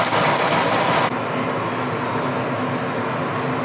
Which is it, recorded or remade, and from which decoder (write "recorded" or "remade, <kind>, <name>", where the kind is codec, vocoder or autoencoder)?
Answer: recorded